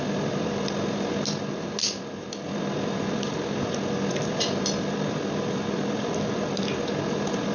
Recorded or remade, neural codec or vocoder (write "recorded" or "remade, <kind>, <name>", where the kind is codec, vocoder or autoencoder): recorded